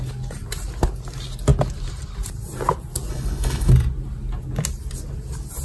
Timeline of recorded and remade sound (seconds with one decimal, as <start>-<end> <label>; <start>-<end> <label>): 0.0-3.1 recorded; 3.1-3.7 remade; 3.7-5.6 recorded